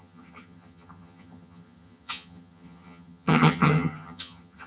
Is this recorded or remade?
remade